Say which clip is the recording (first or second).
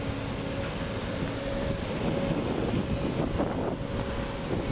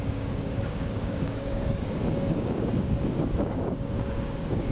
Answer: first